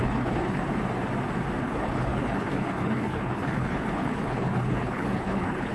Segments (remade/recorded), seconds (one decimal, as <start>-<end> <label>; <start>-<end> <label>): 0.0-0.6 remade; 0.6-1.6 recorded; 1.6-5.7 remade